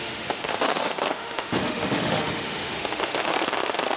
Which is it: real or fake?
fake